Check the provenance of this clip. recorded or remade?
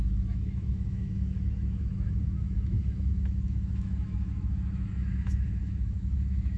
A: remade